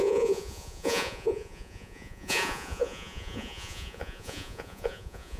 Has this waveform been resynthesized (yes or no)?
yes